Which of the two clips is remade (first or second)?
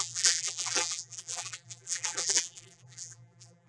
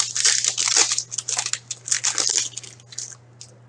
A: first